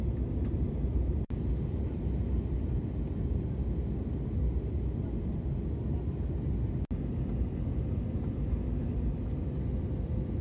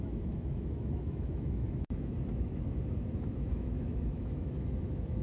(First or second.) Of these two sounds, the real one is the first